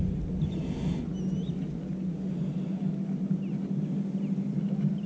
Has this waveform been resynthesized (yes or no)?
no